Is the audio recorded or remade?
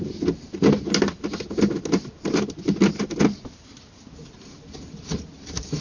recorded